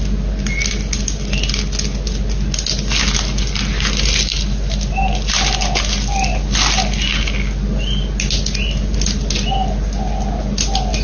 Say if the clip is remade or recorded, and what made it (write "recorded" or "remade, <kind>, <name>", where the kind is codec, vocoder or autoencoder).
recorded